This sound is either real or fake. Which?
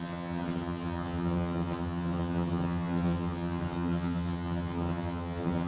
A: fake